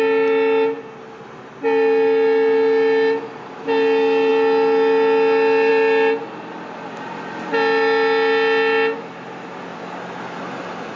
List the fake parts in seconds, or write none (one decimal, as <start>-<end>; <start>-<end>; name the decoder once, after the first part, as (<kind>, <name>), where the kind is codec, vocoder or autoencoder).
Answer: none